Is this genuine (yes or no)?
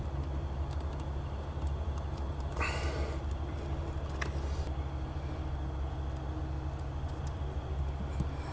yes